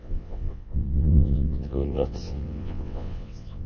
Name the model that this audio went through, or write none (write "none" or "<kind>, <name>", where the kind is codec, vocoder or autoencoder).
vocoder, WaveNeXt